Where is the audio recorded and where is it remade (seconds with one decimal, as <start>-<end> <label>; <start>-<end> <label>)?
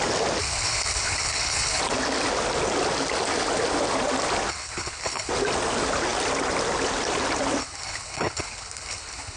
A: 0.0-0.4 recorded; 0.4-1.8 remade; 1.8-4.5 recorded; 4.5-5.3 remade; 5.3-7.6 recorded; 7.6-9.4 remade